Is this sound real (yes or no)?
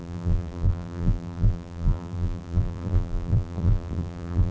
no